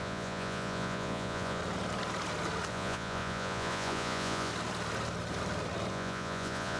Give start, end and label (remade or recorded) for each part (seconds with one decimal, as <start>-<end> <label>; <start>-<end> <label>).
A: 0.0-1.6 remade; 1.6-2.7 recorded; 2.7-4.5 remade; 4.5-5.9 recorded; 5.9-6.8 remade